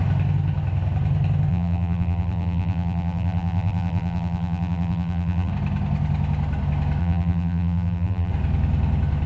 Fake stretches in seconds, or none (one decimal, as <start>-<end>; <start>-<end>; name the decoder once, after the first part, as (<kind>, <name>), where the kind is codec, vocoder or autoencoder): 1.5-5.5 (vocoder, BigVGAN v2); 7.0-8.3